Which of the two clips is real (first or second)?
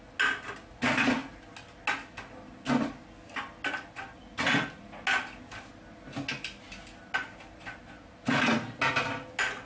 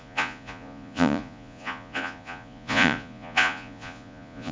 first